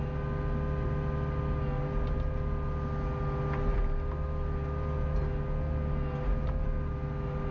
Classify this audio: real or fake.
real